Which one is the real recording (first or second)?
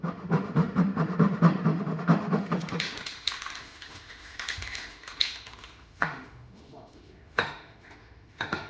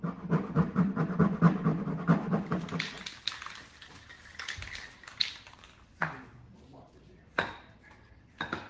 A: second